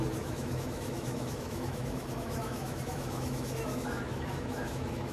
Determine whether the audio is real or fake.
fake